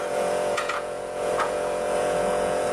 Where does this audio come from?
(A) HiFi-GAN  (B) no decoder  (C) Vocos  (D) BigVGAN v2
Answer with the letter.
C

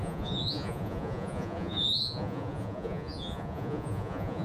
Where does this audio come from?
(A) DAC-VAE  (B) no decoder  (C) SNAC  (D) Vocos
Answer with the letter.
D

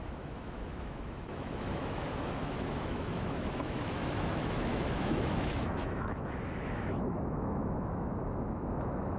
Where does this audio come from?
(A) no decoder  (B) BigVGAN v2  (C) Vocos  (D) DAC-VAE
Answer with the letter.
D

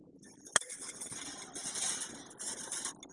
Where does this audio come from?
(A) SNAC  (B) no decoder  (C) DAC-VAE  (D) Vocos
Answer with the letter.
B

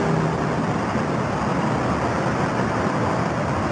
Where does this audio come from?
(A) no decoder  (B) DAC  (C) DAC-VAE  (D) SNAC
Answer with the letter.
A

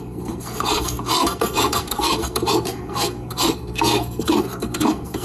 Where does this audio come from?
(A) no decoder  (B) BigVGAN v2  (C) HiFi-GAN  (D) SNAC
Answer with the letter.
D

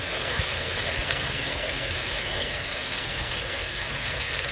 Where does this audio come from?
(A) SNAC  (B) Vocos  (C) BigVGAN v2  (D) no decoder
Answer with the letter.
A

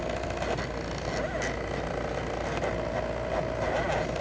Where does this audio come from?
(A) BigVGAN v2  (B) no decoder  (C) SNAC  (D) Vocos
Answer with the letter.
B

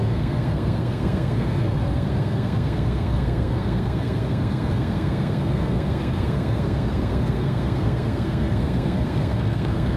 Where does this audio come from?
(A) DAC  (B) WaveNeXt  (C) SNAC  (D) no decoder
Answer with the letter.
C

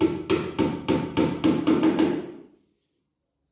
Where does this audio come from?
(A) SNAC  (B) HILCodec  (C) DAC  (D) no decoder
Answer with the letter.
D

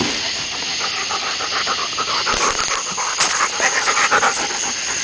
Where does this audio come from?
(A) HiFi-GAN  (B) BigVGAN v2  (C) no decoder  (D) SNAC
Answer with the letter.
C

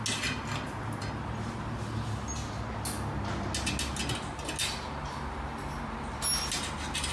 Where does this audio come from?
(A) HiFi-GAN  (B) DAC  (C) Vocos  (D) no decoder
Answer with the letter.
D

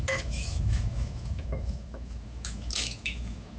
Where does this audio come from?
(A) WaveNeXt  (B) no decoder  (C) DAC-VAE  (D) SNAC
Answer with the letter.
C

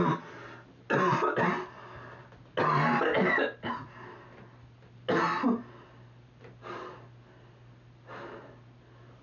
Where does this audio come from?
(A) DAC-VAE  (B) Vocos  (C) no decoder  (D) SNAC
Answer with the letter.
C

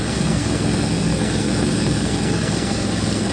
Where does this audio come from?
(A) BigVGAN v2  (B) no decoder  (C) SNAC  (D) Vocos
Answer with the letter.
C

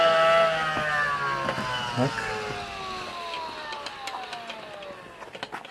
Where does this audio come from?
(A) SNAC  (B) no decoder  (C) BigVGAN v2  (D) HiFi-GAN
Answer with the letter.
B